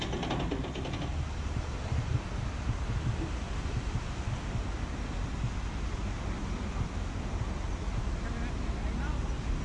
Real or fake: real